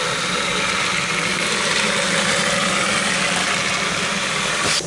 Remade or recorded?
recorded